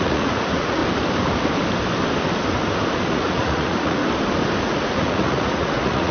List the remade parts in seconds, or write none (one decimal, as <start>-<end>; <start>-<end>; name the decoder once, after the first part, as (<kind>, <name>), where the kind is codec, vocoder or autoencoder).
0.0-0.8 (vocoder, Vocos); 3.1-4.0; 4.6-6.1